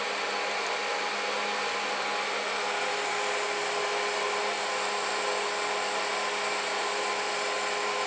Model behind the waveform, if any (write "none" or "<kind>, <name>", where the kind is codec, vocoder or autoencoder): none